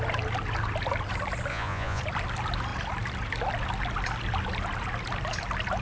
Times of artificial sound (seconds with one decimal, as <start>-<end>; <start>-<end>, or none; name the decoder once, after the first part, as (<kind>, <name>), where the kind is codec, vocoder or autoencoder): 1.5-2.0 (vocoder, Vocos)